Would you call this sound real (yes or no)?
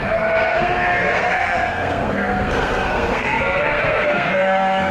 no